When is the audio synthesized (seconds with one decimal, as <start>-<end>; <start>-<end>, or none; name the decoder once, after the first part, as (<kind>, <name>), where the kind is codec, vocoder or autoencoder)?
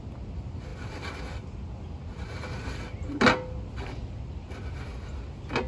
none